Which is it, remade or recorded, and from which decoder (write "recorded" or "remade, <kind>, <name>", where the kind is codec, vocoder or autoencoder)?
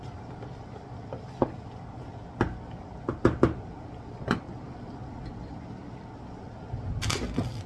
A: recorded